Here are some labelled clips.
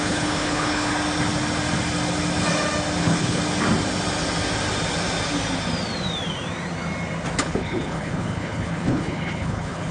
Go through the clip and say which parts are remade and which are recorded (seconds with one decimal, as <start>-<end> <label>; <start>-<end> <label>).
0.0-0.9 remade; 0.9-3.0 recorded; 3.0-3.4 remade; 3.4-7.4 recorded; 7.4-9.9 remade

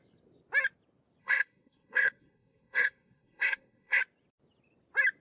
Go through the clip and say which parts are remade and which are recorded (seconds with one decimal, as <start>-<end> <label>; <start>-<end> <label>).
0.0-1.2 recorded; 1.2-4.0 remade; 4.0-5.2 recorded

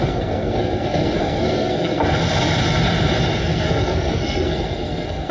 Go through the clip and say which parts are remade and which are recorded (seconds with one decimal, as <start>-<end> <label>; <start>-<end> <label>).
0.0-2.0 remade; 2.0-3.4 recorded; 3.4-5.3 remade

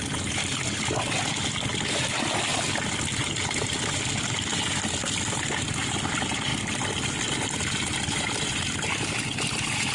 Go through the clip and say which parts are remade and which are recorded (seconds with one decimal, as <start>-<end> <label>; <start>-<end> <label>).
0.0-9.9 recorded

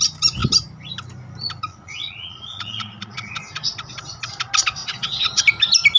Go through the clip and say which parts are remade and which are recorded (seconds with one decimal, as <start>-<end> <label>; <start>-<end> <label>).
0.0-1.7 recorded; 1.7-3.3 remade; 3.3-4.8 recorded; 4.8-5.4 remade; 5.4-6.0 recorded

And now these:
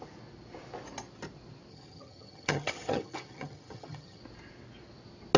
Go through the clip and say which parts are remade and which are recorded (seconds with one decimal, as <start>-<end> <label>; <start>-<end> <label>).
0.0-1.7 recorded; 1.7-4.2 remade; 4.2-5.4 recorded